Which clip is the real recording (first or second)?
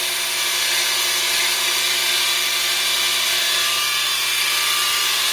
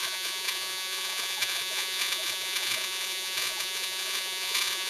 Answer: first